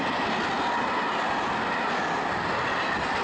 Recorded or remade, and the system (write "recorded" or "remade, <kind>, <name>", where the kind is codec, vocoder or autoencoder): recorded